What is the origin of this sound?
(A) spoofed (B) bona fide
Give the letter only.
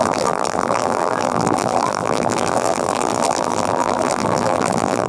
A